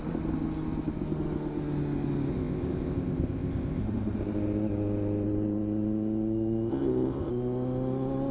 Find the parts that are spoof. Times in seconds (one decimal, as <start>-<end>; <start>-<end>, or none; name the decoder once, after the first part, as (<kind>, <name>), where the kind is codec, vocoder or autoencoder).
2.3-3.8 (codec, ZipCodec); 6.7-7.3